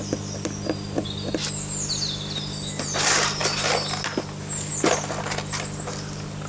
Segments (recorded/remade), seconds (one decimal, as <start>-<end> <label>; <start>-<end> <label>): 0.0-6.5 recorded